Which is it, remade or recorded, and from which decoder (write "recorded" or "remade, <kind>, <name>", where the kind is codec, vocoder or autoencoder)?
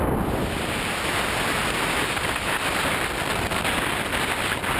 remade, vocoder, BigVGAN v2